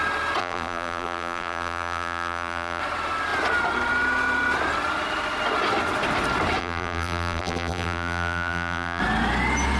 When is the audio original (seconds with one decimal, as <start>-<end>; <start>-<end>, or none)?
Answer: 0.0-0.4; 2.8-6.6; 9.0-9.8